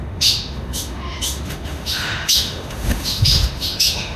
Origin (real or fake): fake